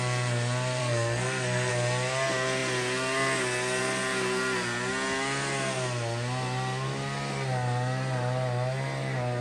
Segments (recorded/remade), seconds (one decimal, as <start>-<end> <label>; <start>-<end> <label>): 0.0-0.8 recorded; 0.8-1.7 remade; 1.7-9.4 recorded